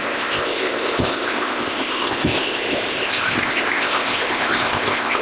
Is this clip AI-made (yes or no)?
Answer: yes